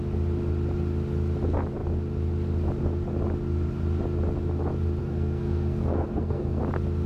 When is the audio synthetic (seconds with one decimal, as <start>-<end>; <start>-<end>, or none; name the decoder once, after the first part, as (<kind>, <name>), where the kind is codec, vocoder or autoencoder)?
5.0-6.6 (codec, SNAC)